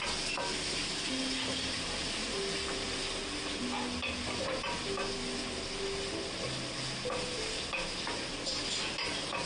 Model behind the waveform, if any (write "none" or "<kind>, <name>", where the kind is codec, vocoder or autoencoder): none